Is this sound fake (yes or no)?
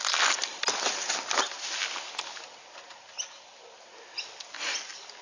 no